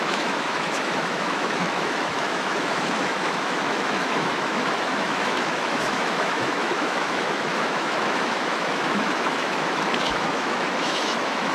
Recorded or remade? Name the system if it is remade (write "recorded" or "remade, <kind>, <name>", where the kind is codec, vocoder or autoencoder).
remade, autoencoder, DAC-VAE